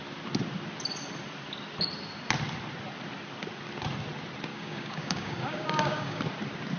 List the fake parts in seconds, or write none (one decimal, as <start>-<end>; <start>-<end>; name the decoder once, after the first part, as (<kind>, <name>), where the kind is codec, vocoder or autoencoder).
4.5-6.2 (codec, DAC)